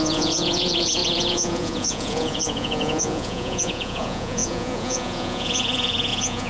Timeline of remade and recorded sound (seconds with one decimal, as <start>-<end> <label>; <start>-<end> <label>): 0.0-6.5 remade